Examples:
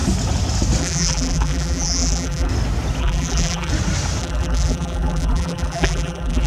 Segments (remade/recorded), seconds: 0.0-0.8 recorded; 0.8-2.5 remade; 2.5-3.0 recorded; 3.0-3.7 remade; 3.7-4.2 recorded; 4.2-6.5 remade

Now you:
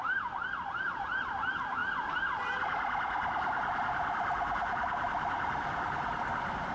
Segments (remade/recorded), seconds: 0.0-6.7 recorded

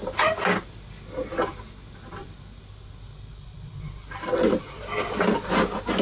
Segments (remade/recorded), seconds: 0.0-6.0 recorded

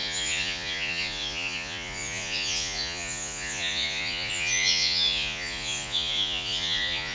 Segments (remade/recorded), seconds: 0.0-7.1 remade

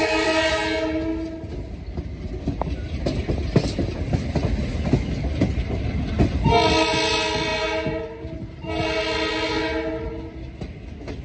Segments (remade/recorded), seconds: 0.0-11.2 recorded

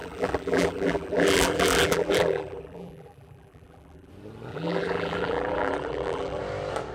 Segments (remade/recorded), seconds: 0.0-4.1 remade; 4.1-4.5 recorded; 4.5-6.4 remade; 6.4-6.9 recorded

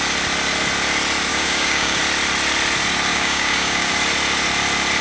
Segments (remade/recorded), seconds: 0.0-1.3 recorded; 1.3-2.0 remade; 2.0-3.1 recorded; 3.1-3.9 remade; 3.9-5.0 recorded